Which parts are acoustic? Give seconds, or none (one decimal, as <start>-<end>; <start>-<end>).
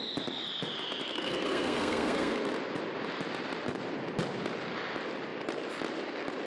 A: 0.0-1.0; 2.5-6.5